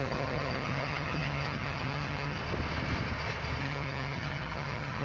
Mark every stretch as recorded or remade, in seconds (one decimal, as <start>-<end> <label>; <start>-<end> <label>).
0.0-2.4 remade; 2.4-3.6 recorded; 3.6-5.0 remade